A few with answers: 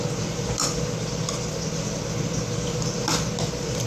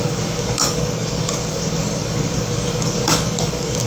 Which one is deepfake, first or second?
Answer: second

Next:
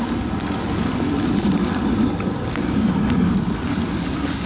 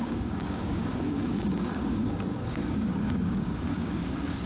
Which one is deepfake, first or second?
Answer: second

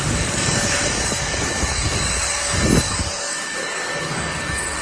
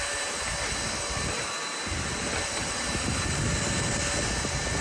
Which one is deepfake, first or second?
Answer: first